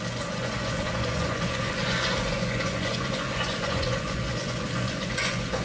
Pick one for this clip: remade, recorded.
remade